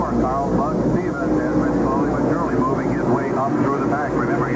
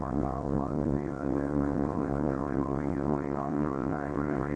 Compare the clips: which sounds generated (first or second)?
second